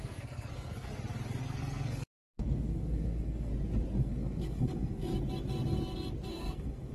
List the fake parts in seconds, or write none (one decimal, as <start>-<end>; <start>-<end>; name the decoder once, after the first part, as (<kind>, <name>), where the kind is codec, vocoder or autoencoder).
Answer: 0.0-0.9 (codec, SNAC); 1.4-3.5; 4.0-5.1; 6.3-6.9